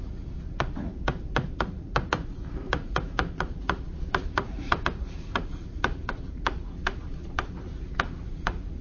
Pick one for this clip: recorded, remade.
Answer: remade